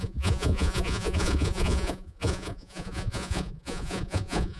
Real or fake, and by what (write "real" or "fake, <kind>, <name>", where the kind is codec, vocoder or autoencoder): fake, vocoder, Vocos